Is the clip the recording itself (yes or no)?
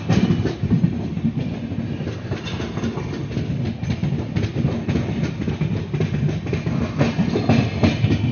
yes